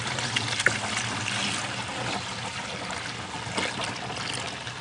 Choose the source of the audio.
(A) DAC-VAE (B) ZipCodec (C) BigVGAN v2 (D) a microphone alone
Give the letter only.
D